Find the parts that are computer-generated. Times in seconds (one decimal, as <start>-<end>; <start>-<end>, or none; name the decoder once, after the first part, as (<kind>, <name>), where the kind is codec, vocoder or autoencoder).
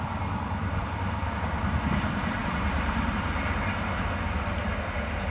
2.4-3.0 (vocoder, BigVGAN v2)